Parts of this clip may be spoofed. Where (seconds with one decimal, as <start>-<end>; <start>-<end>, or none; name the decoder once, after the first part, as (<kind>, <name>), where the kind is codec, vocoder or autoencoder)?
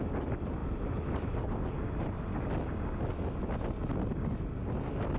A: none